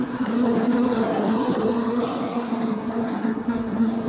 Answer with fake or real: fake